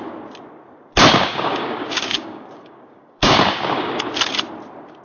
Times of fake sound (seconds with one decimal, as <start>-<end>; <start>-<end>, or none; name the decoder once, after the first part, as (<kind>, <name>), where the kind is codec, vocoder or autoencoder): 1.1-4.1 (codec, DAC)